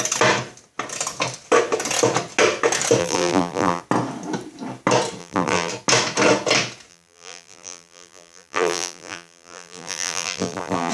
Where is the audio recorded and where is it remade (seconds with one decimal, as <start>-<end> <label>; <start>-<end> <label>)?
0.0-3.0 recorded; 3.0-3.8 remade; 3.8-5.2 recorded; 5.2-5.7 remade; 5.7-6.9 recorded; 6.9-10.9 remade